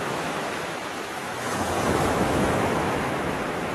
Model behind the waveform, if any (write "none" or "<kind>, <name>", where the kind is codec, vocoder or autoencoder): autoencoder, DAC-VAE